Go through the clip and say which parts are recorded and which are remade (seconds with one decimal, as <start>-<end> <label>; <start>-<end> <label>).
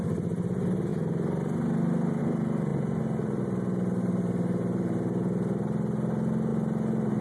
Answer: 0.0-7.2 recorded